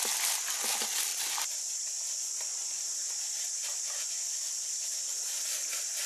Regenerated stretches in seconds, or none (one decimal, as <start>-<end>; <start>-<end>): 1.1-2.2; 2.6-5.1

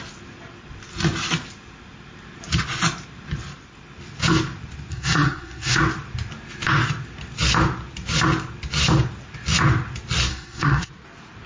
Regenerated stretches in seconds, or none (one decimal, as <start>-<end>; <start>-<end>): 4.9-5.8; 10.3-10.9

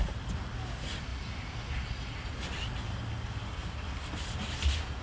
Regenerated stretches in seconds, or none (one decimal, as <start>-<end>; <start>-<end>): none